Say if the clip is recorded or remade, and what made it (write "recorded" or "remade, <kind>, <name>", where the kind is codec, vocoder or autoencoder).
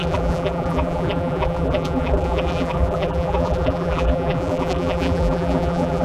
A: remade, vocoder, BigVGAN v2